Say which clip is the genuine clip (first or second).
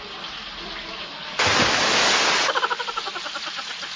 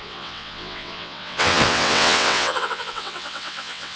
first